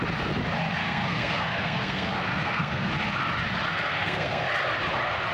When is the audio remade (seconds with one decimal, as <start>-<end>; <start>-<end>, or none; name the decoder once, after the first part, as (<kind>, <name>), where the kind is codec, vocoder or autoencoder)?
0.8-2.9 (codec, SNAC); 3.7-4.4